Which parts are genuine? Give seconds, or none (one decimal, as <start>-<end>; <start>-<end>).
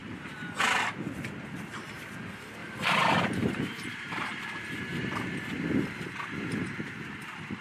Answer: 0.0-2.6; 5.1-7.6